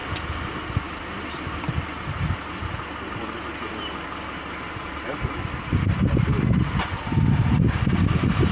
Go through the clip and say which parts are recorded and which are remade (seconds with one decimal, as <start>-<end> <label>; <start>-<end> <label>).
0.0-8.5 recorded